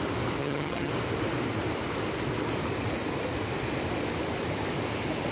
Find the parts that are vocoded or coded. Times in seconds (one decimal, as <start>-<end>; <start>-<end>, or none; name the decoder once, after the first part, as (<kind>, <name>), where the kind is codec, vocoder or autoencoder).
0.4-0.9 (vocoder, HiFi-GAN)